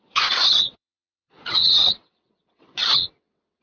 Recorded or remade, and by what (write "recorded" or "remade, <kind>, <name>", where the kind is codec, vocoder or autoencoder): remade, vocoder, WaveNeXt